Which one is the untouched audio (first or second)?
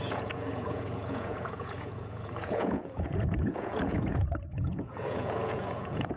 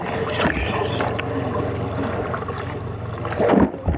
second